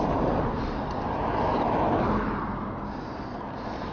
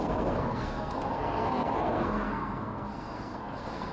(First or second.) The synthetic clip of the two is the second